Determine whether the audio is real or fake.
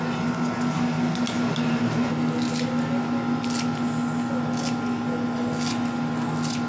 real